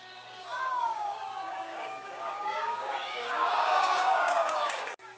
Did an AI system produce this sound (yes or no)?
yes